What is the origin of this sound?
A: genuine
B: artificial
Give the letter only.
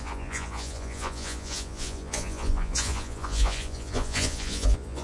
B